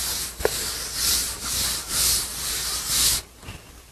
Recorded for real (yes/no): yes